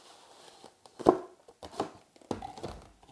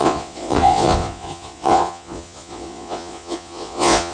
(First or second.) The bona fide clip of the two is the first